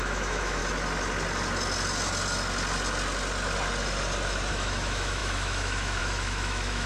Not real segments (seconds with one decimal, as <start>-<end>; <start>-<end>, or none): 0.0-0.6; 4.5-6.9